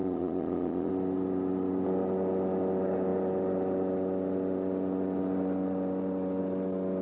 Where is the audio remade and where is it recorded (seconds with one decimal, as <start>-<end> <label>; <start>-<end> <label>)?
0.0-0.9 remade; 0.9-7.0 recorded